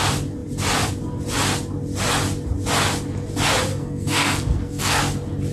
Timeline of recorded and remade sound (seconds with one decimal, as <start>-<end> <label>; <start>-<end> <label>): 0.0-3.7 recorded; 3.7-5.0 remade; 5.0-5.5 recorded